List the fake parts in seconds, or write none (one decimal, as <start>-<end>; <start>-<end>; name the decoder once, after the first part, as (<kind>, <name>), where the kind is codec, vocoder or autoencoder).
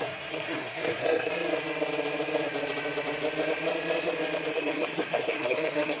0.0-1.3 (codec, SNAC); 4.5-6.0